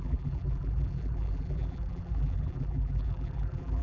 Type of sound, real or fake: fake